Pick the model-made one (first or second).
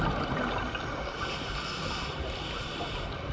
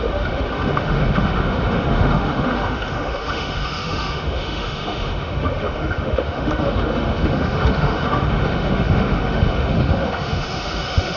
second